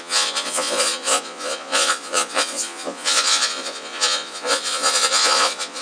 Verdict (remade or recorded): remade